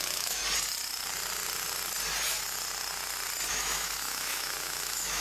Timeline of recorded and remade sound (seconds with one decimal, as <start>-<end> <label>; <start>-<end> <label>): 0.0-0.4 remade; 0.4-3.5 recorded; 3.5-5.2 remade